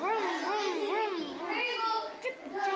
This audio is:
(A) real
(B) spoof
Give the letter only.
A